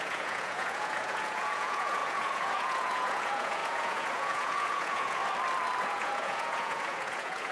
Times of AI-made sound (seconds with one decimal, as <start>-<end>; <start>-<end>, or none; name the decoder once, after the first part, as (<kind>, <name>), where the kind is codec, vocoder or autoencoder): 0.0-5.2 (vocoder, Vocos); 5.8-7.5